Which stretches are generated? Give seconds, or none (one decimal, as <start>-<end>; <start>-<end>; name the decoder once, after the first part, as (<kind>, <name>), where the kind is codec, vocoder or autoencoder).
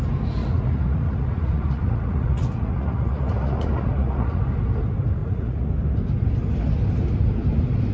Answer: 0.4-4.4 (vocoder, Vocos); 5.2-5.7